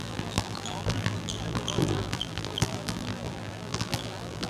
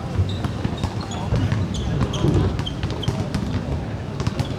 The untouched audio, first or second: second